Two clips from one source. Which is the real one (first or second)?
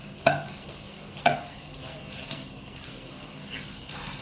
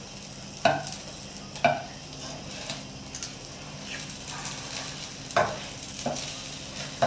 second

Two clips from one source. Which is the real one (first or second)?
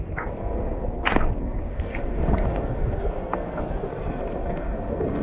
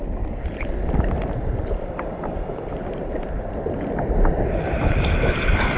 second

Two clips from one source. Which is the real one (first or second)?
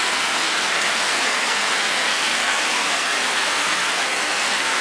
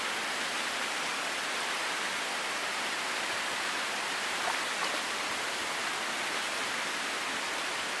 second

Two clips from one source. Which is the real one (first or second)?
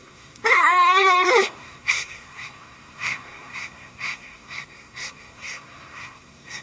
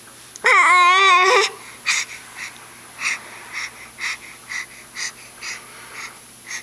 second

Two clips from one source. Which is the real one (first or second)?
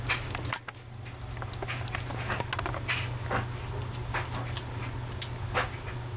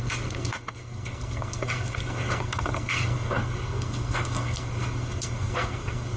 first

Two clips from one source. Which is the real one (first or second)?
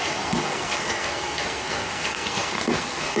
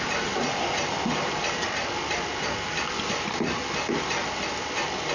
second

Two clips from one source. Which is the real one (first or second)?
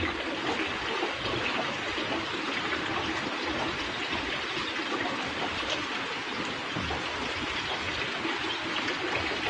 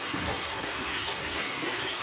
first